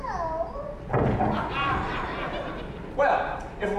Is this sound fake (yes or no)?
no